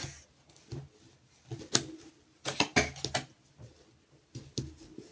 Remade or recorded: recorded